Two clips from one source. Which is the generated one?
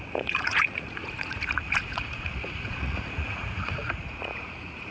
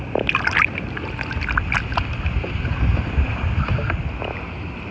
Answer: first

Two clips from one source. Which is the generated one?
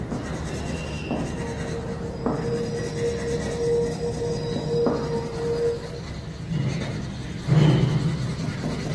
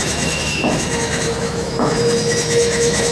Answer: second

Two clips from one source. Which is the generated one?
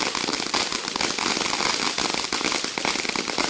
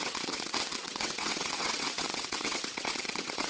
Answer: second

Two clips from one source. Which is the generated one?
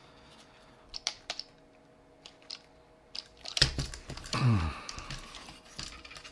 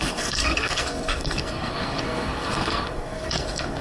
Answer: second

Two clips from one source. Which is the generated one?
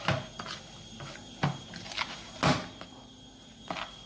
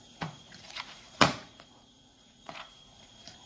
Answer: second